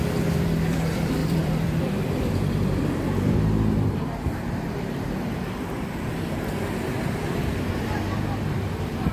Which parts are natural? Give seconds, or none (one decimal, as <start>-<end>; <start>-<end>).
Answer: none